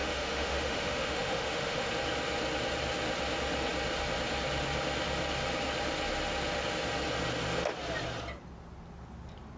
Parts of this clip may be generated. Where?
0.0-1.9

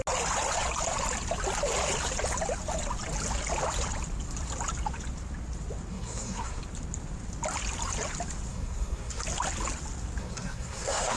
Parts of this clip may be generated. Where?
5.9-6.6; 8.5-9.2; 10.2-11.2

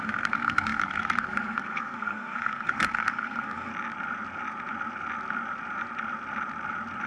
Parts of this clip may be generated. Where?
0.0-3.7

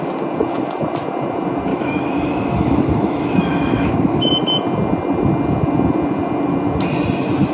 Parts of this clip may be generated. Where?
1.7-4.3

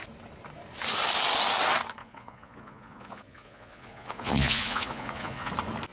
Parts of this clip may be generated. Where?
2.0-5.5